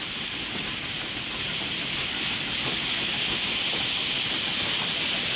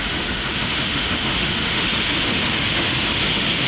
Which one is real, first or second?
first